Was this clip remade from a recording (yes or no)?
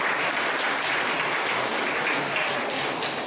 no